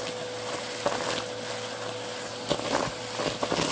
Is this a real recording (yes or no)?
yes